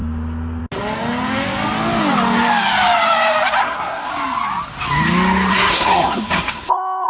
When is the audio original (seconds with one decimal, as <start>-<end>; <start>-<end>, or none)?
0.0-3.6; 4.1-5.5